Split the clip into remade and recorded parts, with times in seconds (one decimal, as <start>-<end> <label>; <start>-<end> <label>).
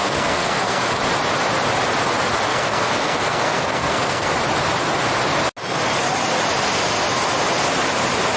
0.0-1.0 remade; 1.0-2.5 recorded; 2.5-4.3 remade; 4.3-8.4 recorded